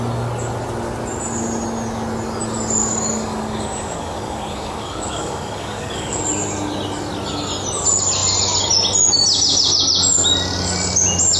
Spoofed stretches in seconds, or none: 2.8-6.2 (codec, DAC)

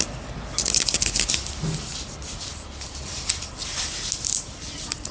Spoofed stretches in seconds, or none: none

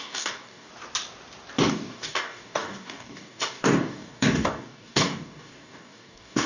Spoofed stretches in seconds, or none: 0.0-0.7 (codec, DAC); 1.7-6.5

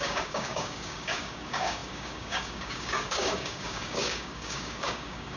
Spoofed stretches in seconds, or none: 0.0-5.4 (codec, DAC)

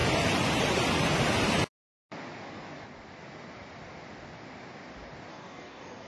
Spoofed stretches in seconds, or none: 5.3-6.1 (codec, DAC)

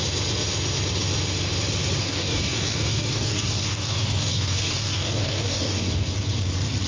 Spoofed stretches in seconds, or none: 2.0-6.1 (codec, DAC)

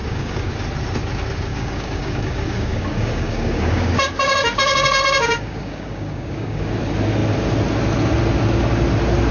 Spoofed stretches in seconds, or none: 0.0-0.5 (codec, DAC); 1.5-6.7